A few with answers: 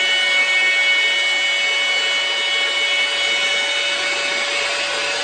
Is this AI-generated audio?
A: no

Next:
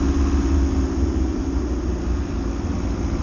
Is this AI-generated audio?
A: no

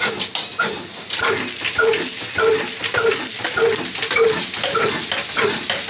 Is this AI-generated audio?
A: no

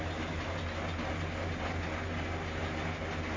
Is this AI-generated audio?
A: no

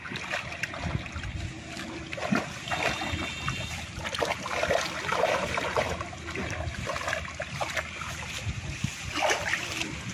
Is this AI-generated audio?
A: no